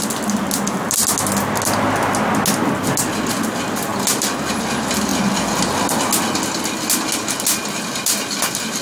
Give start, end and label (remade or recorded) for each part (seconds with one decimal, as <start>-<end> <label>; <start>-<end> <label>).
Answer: 0.0-8.8 recorded